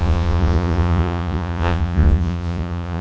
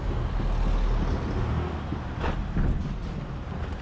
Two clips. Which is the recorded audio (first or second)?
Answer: second